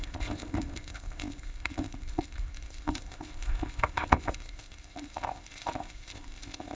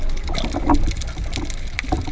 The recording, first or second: second